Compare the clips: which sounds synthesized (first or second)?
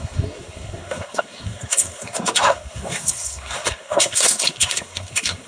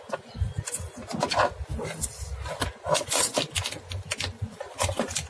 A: first